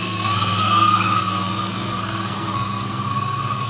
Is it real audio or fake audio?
fake